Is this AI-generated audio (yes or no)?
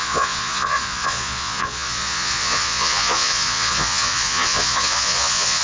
yes